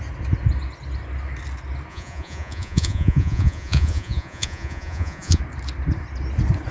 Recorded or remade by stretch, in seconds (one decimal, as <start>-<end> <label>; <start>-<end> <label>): 0.0-1.9 recorded; 1.9-5.4 remade; 5.4-6.7 recorded